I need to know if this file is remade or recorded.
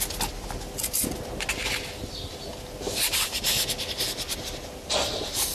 recorded